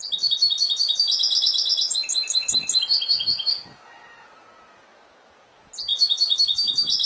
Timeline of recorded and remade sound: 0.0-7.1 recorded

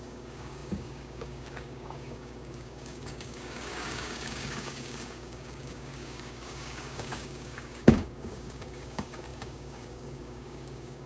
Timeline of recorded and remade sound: 0.0-11.1 remade

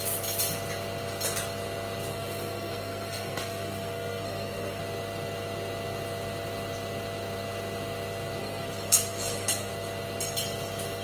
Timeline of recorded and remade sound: 0.0-2.1 recorded; 2.1-4.8 remade; 4.8-8.4 recorded; 8.4-9.7 remade; 9.7-11.0 recorded

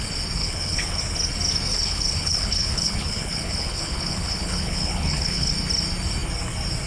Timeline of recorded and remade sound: 0.0-0.4 recorded; 0.4-1.0 remade; 1.0-1.7 recorded; 1.7-5.5 remade; 5.5-6.9 recorded

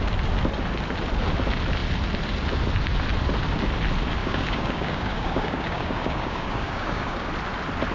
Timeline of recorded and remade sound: 0.0-4.2 recorded; 4.2-7.3 remade; 7.3-7.9 recorded

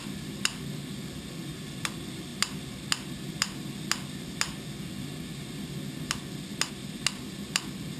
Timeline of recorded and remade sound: 0.0-8.0 recorded